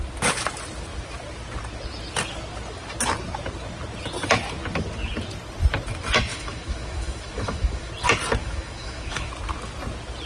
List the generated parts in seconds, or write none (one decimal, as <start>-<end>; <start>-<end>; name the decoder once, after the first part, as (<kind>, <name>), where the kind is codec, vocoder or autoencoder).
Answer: 6.3-7.9 (autoencoder, DAC-VAE); 8.4-9.3